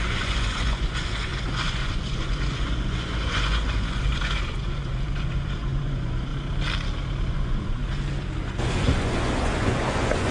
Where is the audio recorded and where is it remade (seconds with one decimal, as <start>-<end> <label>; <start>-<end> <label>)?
0.0-6.3 remade; 6.3-7.3 recorded; 7.3-7.8 remade; 7.8-8.4 recorded; 8.4-10.3 remade